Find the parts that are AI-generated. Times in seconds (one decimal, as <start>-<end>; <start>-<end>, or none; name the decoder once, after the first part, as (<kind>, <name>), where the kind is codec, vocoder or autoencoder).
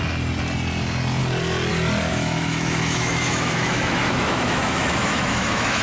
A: 2.1-5.8 (autoencoder, DAC-VAE)